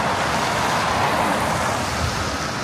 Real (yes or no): yes